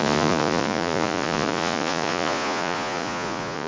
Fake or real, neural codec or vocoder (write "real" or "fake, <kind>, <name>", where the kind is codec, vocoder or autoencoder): fake, vocoder, Vocos